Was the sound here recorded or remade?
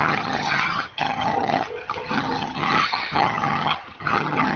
remade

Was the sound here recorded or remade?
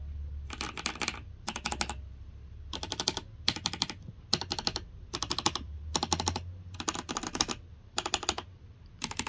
recorded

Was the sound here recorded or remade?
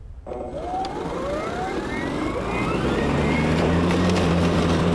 remade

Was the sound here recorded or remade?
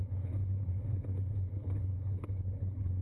remade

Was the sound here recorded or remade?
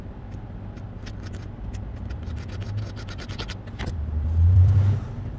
recorded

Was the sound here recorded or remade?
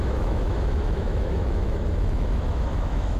remade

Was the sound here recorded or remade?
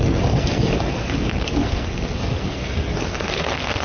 remade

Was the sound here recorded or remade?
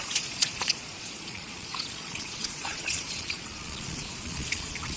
remade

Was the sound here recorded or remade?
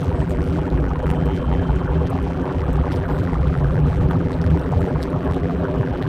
remade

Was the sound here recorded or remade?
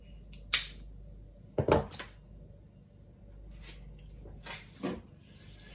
recorded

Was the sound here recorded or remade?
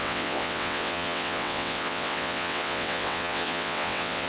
remade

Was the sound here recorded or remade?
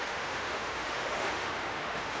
remade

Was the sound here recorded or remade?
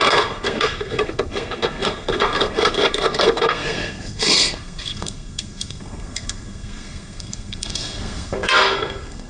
remade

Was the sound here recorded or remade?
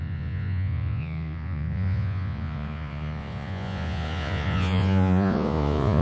remade